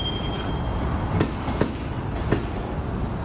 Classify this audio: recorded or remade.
recorded